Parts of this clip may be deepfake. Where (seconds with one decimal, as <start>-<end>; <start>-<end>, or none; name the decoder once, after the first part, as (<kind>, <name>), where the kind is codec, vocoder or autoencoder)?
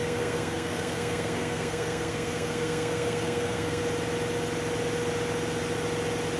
0.0-3.8 (codec, SNAC)